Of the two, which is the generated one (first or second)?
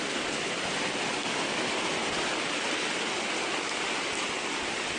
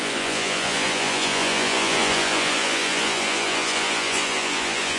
second